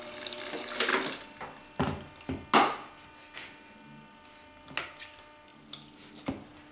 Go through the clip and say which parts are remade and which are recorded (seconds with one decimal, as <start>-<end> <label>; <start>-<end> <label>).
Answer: 0.0-6.7 recorded